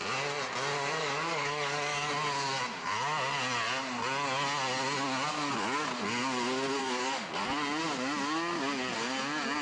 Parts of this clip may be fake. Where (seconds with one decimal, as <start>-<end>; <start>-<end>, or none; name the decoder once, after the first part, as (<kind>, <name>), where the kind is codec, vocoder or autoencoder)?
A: 1.0-2.1 (codec, DAC); 6.8-7.4